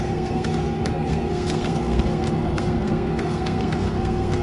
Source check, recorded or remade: remade